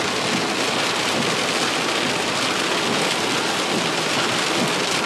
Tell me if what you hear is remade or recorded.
recorded